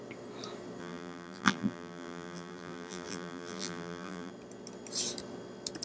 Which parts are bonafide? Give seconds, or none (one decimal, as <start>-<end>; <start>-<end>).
0.0-0.8; 4.3-5.8